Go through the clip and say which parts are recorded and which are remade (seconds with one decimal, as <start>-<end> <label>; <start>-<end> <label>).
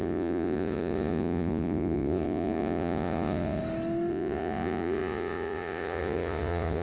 0.0-3.6 remade; 3.6-4.1 recorded; 4.1-6.8 remade